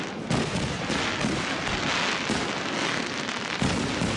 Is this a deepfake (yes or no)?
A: no